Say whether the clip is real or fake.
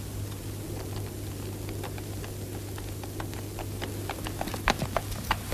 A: real